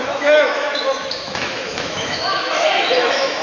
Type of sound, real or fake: fake